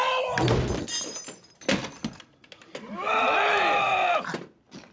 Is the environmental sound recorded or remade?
recorded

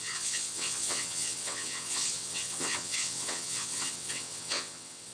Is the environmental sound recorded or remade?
remade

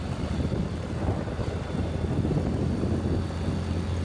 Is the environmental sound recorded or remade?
recorded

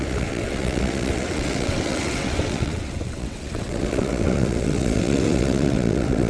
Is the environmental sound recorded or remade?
remade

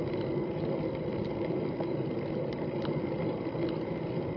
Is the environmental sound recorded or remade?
recorded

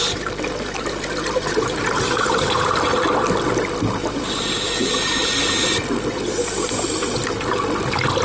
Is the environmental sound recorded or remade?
recorded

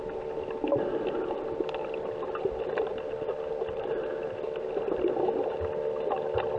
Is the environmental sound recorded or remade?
recorded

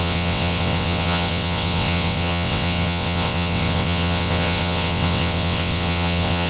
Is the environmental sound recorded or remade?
remade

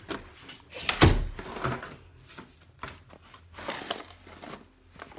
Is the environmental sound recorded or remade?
recorded